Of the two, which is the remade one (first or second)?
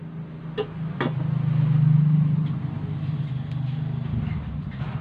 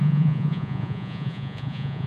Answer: second